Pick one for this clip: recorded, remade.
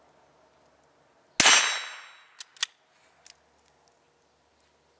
recorded